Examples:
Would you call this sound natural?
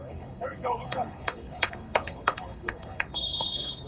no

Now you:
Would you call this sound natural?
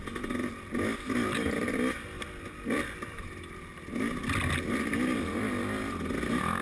yes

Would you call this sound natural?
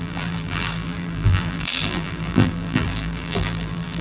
no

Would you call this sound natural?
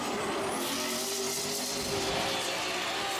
yes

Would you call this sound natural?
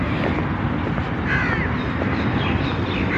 yes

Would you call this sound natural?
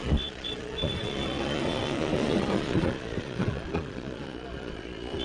no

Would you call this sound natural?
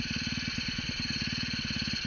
yes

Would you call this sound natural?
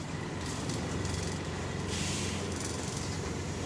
no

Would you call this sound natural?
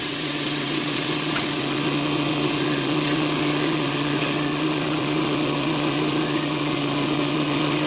no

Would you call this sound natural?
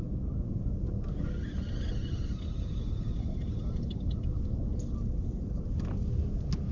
yes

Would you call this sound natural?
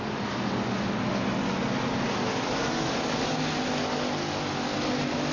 yes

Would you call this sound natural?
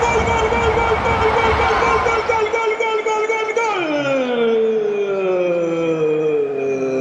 yes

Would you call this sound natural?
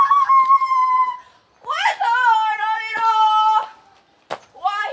yes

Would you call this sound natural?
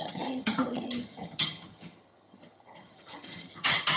no